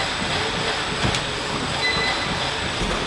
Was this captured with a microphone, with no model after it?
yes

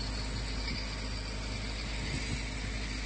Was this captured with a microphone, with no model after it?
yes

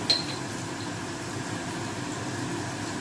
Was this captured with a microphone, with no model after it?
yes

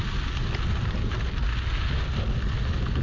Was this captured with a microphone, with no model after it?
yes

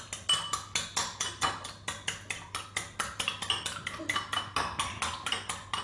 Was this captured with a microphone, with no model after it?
yes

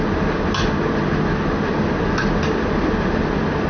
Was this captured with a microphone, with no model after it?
yes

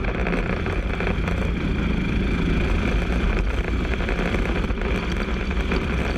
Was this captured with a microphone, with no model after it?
no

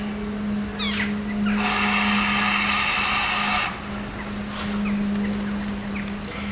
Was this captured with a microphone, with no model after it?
yes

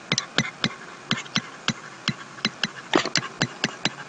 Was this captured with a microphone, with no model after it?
yes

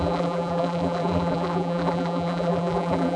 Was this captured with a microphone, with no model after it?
no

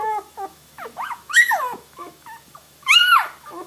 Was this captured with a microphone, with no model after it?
no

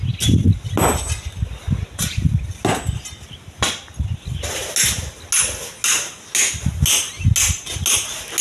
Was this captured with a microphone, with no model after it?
yes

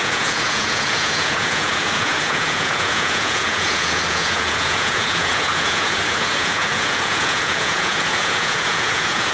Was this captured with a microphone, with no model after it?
no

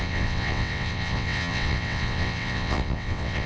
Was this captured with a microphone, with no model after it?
no